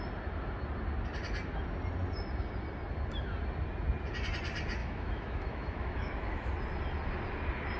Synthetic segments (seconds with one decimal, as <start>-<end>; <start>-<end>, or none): 4.8-6.5